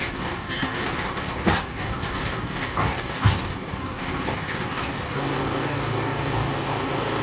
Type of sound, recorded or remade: remade